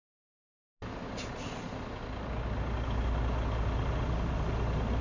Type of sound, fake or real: real